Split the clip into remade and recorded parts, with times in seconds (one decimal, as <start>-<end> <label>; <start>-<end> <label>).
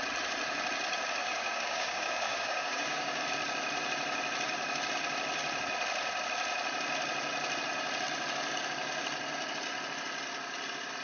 0.0-1.2 recorded; 1.2-3.2 remade; 3.2-11.0 recorded